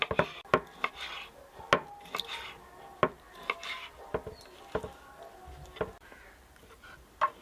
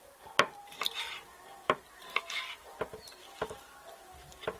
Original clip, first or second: first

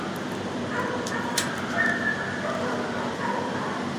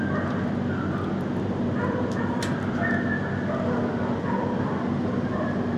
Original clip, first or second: second